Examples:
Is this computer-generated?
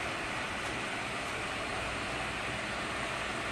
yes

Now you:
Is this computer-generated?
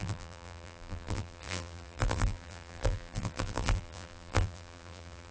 yes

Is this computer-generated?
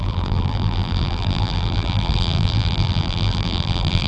yes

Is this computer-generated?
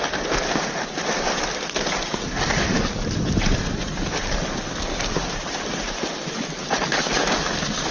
no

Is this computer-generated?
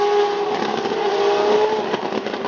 no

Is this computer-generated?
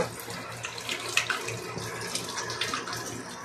no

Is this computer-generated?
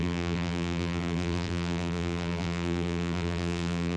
yes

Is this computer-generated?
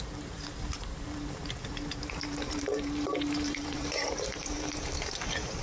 yes